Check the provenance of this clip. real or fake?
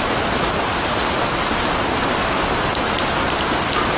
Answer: real